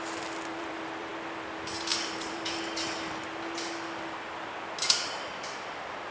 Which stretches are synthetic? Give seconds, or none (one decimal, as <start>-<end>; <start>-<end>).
0.5-1.1; 1.9-2.6